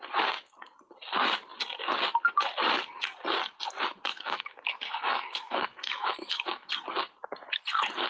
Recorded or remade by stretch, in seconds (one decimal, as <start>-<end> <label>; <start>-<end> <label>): 0.0-4.1 recorded; 4.1-6.7 remade; 6.7-8.1 recorded